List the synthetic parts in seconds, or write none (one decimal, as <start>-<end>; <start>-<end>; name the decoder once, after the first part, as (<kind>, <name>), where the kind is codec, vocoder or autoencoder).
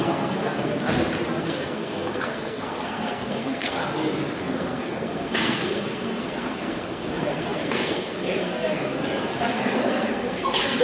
0.0-0.8 (codec, SNAC); 1.4-3.8; 4.4-10.8